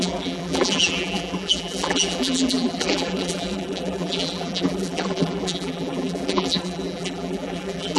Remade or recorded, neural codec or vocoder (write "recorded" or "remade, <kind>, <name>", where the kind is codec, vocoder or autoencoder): remade, vocoder, BigVGAN v2